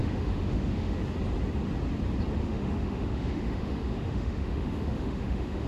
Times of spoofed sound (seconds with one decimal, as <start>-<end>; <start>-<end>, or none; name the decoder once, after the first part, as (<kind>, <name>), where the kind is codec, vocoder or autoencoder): 0.0-1.0 (autoencoder, DAC-VAE); 2.4-5.7

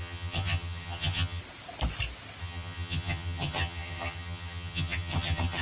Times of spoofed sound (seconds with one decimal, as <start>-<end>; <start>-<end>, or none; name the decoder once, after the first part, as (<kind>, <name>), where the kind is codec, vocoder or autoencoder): 0.0-1.4 (vocoder, HiFi-GAN); 2.4-5.6